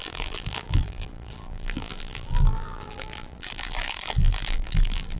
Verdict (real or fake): fake